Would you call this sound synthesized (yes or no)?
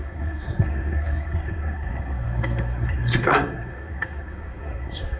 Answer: yes